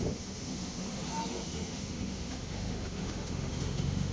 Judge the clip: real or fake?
fake